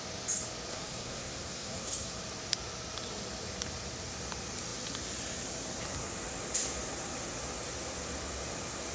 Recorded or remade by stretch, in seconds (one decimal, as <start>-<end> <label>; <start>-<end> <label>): 0.0-0.7 recorded; 0.7-2.2 remade; 2.2-8.9 recorded